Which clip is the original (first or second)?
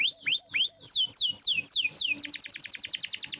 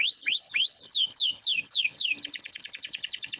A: first